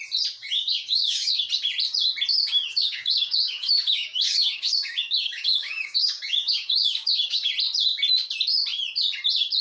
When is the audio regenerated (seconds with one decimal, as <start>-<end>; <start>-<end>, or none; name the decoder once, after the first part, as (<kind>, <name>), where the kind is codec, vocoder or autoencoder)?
0.4-1.4 (codec, DAC); 2.3-7.5